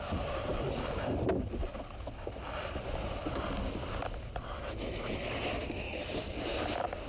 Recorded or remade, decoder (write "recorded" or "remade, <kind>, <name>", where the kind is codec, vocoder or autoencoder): recorded